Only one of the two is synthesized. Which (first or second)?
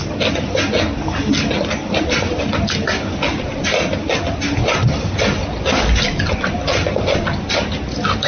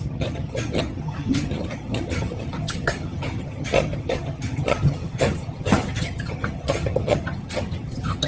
second